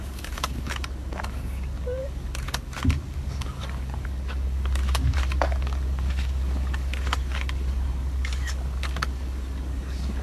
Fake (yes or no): yes